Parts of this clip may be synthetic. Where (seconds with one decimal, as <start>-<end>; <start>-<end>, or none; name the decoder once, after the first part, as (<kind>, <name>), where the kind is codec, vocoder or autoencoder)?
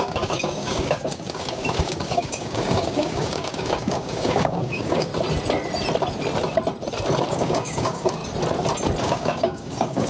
0.0-5.1 (codec, DAC); 7.3-8.2; 9.0-10.1